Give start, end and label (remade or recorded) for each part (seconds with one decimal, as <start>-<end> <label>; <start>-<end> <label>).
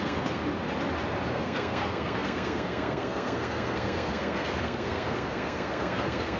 0.0-0.4 remade; 0.4-1.3 recorded; 1.3-6.4 remade